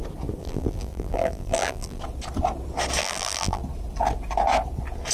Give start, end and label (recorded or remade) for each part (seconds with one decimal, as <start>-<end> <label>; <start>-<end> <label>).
0.0-0.4 recorded; 0.4-2.0 remade; 2.0-3.0 recorded; 3.0-3.6 remade; 3.6-5.1 recorded